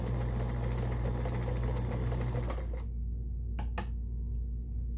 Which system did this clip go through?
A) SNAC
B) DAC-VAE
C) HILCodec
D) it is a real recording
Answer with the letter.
D